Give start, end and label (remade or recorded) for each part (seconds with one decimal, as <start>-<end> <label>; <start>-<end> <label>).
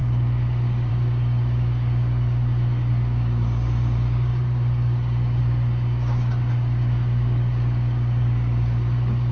0.0-9.3 remade